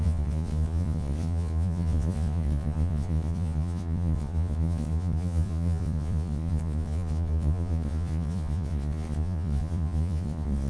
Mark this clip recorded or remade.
remade